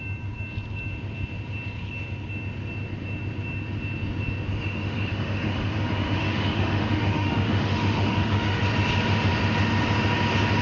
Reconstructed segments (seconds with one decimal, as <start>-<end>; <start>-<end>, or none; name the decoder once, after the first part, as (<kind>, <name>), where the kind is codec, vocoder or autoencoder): 4.5-8.6 (autoencoder, DAC-VAE)